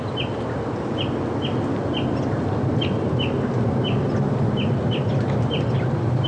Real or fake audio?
real